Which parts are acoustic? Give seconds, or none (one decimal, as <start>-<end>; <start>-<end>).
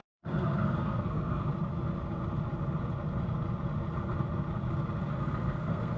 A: 1.5-5.1